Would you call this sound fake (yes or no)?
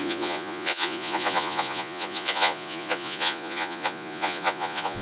yes